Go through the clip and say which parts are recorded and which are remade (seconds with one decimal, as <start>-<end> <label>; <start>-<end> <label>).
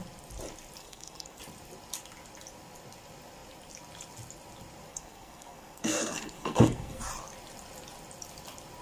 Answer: 0.0-0.8 recorded; 0.8-1.4 remade; 1.4-4.9 recorded; 4.9-7.0 remade; 7.0-8.8 recorded